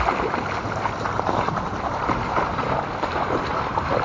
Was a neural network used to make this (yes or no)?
no